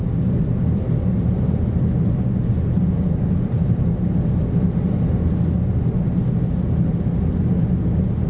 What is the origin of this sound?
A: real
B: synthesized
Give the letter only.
A